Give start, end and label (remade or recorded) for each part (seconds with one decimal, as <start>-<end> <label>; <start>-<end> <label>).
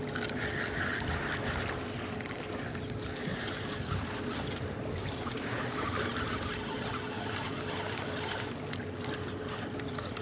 0.0-3.3 recorded; 3.3-6.2 remade; 6.2-10.2 recorded